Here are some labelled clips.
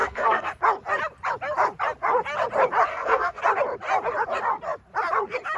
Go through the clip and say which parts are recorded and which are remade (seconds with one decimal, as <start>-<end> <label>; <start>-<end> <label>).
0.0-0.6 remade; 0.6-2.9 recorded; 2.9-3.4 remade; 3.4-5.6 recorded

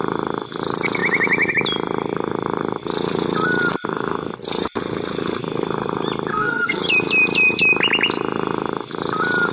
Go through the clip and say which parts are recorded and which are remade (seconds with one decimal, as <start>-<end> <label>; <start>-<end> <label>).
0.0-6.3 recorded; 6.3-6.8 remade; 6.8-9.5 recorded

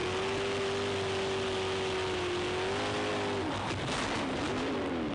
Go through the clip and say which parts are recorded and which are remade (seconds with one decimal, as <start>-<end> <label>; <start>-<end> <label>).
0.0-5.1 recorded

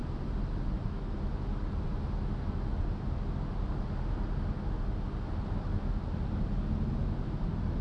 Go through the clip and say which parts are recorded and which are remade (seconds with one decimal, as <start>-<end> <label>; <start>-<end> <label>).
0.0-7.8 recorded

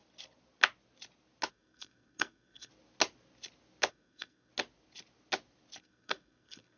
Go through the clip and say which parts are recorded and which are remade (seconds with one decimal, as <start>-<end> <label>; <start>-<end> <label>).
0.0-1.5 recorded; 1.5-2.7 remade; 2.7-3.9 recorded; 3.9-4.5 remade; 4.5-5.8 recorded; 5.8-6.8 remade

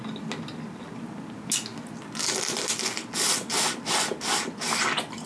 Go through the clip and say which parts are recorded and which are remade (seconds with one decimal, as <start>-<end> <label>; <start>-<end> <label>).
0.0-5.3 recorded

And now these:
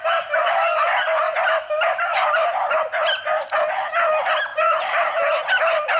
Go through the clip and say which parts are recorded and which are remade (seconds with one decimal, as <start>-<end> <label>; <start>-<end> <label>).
0.0-6.0 recorded

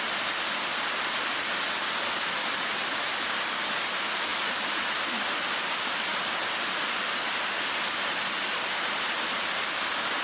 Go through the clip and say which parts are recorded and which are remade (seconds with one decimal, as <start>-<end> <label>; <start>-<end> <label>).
0.0-10.2 recorded